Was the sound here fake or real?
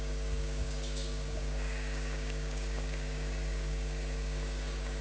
fake